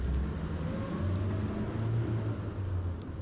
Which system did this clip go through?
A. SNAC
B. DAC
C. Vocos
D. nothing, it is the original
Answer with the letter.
D